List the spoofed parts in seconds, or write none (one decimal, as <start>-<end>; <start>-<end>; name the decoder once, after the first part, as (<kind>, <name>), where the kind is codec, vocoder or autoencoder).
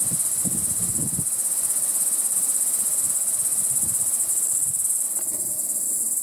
0.4-3.1 (vocoder, BigVGAN v2); 3.5-4.3